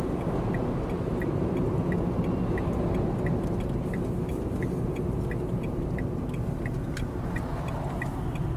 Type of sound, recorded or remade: recorded